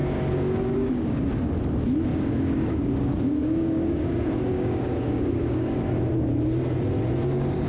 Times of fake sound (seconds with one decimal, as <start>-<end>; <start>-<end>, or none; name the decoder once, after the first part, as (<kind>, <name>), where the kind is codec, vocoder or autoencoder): 0.0-1.4 (codec, DAC); 2.1-5.9